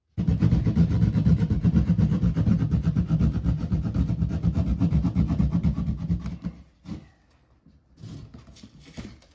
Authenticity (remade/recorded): recorded